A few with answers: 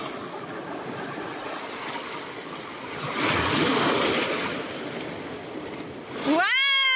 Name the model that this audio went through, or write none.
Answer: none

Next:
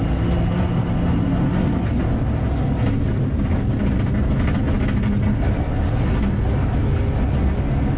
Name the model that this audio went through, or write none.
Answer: none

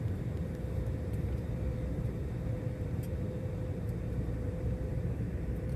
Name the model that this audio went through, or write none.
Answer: vocoder, BigVGAN v2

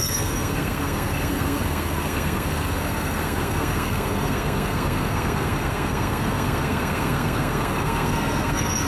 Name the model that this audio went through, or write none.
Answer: codec, SNAC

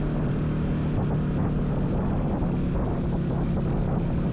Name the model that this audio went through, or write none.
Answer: none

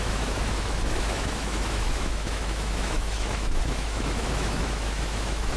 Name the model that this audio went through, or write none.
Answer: autoencoder, DAC-VAE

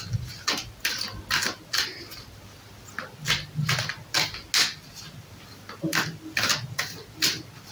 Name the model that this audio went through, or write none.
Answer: none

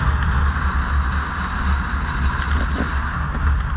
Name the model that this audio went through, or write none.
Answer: none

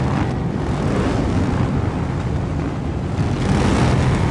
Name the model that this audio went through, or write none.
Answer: none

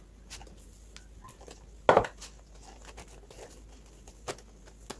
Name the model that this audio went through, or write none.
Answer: none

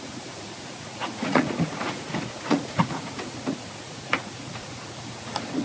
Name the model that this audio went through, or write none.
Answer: vocoder, Vocos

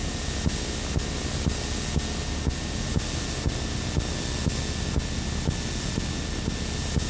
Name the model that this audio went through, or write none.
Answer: none